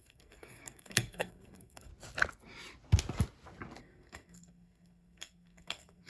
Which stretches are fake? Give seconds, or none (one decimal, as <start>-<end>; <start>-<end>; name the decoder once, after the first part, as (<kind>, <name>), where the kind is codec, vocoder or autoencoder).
0.0-1.9 (codec, SNAC); 3.8-6.1